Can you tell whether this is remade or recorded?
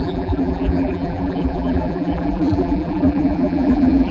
remade